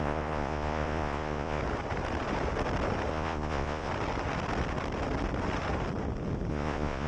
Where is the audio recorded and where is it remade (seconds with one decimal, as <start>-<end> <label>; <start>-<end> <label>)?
0.0-1.6 remade; 1.6-3.1 recorded; 3.1-3.9 remade; 3.9-6.5 recorded; 6.5-7.1 remade